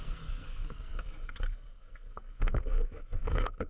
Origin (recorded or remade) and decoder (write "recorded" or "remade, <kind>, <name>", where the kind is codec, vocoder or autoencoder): remade, codec, SNAC